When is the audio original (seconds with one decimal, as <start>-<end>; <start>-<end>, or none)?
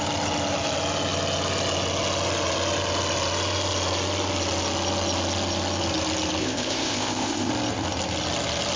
0.0-6.4; 7.5-8.8